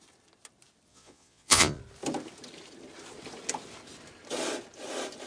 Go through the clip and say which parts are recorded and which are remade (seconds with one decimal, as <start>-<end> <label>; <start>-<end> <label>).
0.0-0.9 recorded; 0.9-1.8 remade; 1.8-5.3 recorded